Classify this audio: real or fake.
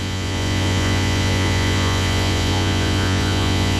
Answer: fake